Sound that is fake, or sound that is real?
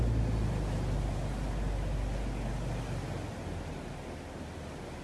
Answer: real